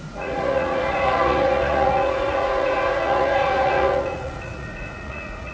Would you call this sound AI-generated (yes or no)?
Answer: yes